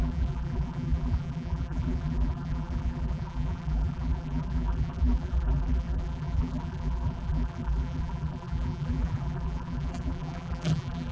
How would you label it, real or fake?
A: fake